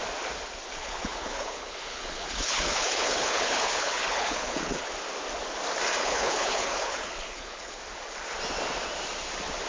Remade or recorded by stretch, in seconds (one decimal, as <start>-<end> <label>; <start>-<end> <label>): 0.0-0.8 recorded; 0.8-4.9 remade; 4.9-6.0 recorded; 6.0-7.8 remade; 7.8-9.7 recorded

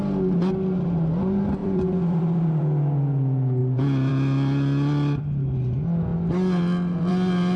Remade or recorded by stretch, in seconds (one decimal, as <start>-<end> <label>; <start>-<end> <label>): 0.0-1.6 recorded; 1.6-2.6 remade; 2.6-7.6 recorded